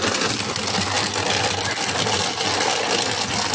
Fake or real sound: real